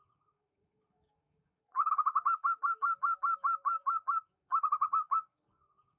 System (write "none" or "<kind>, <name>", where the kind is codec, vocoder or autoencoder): codec, DAC